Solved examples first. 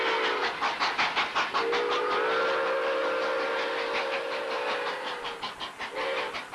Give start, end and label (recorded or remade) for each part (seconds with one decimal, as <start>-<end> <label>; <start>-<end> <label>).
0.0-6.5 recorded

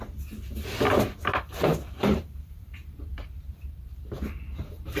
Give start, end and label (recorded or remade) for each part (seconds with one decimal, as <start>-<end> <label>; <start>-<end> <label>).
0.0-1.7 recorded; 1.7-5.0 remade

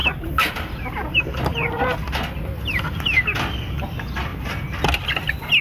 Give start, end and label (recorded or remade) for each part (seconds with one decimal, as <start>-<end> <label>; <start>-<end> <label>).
0.0-0.5 recorded; 0.5-1.5 remade; 1.5-3.5 recorded; 3.5-4.3 remade; 4.3-5.6 recorded

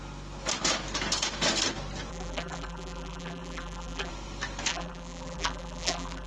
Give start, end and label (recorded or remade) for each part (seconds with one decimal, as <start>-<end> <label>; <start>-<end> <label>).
0.0-2.1 recorded; 2.1-4.1 remade; 4.1-4.7 recorded; 4.7-6.3 remade